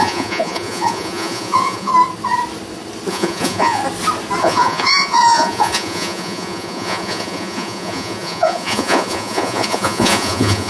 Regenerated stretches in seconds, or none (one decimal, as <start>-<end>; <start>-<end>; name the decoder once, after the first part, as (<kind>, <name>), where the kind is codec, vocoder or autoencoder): 0.0-1.9 (vocoder, Vocos); 3.1-3.8; 4.4-10.7